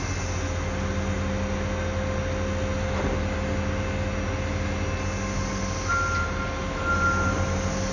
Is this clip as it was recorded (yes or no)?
yes